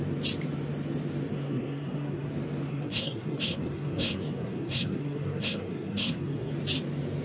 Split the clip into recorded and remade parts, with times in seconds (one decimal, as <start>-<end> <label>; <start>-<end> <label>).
0.0-1.3 recorded; 1.3-2.3 remade; 2.3-2.7 recorded; 2.7-6.5 remade; 6.5-7.2 recorded

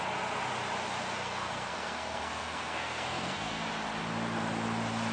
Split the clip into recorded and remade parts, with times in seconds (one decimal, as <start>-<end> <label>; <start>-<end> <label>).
0.0-1.2 recorded; 1.2-3.7 remade; 3.7-5.1 recorded

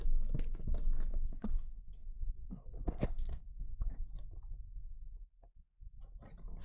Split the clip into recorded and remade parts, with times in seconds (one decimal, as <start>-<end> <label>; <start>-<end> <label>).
0.0-1.1 recorded; 1.1-4.1 remade; 4.1-4.8 recorded; 4.8-5.7 remade; 5.7-6.6 recorded

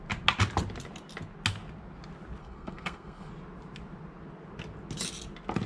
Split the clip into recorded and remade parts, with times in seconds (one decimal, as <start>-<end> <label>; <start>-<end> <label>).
0.0-2.4 recorded; 2.4-3.3 remade; 3.3-5.7 recorded

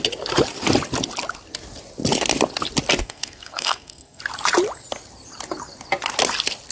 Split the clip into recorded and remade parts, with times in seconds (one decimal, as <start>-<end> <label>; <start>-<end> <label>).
0.0-3.0 recorded; 3.0-4.2 remade; 4.2-6.7 recorded

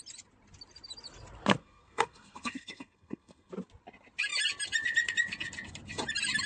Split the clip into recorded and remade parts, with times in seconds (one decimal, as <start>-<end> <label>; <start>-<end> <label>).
0.0-1.6 recorded; 1.6-3.5 remade; 3.5-6.5 recorded

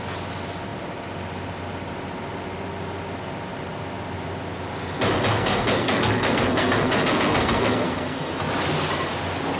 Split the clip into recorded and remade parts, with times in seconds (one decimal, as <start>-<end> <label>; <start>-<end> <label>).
0.0-5.3 recorded; 5.3-8.3 remade; 8.3-9.6 recorded